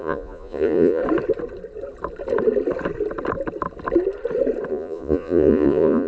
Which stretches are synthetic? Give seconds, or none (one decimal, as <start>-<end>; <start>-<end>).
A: 0.0-1.0; 4.7-6.1